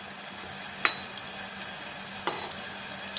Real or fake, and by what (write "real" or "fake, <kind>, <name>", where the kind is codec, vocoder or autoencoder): real